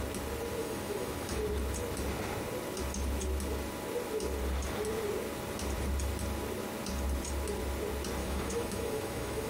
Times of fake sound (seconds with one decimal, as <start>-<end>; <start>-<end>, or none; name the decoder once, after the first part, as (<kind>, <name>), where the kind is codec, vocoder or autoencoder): 0.6-1.4 (autoencoder, DAC-VAE); 8.2-9.5